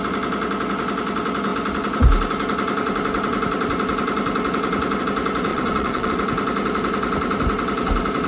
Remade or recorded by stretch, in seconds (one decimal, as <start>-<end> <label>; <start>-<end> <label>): 0.0-5.5 recorded; 5.5-6.1 remade; 6.1-8.3 recorded